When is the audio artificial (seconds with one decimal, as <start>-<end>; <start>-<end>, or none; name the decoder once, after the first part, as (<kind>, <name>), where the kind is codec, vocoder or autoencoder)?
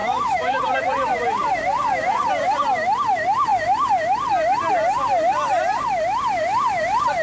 0.0-0.6 (autoencoder, DAC-VAE)